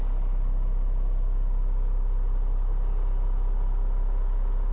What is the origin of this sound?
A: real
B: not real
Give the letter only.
A